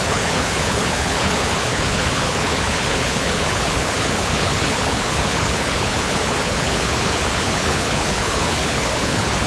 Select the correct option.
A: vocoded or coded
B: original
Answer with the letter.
A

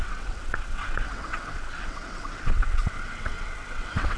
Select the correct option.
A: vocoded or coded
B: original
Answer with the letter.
A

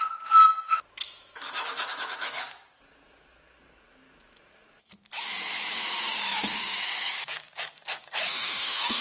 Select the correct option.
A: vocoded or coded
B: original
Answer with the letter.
A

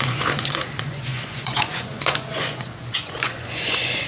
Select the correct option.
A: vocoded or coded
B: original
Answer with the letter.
A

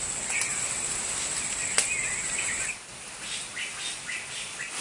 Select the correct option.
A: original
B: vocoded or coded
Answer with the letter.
A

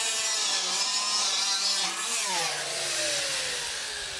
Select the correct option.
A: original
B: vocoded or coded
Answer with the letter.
A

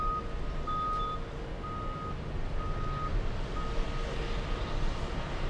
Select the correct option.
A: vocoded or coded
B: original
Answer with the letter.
B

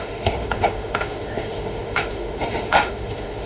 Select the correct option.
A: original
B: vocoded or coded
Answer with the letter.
B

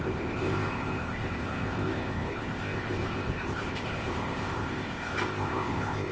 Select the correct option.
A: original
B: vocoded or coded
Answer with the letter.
B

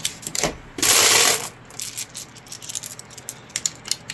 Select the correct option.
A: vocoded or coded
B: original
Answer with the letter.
B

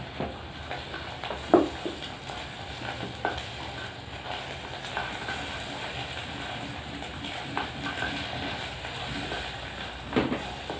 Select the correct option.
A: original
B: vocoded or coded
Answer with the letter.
A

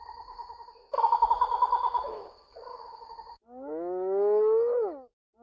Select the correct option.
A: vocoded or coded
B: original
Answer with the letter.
A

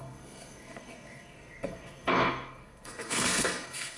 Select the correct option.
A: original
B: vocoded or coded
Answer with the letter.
B